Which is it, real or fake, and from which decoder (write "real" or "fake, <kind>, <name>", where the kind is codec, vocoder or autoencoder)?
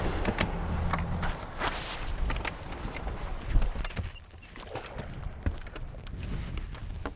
real